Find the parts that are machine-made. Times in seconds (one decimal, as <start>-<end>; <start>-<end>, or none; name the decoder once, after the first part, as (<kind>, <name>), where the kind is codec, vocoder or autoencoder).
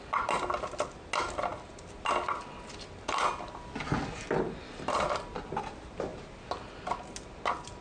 none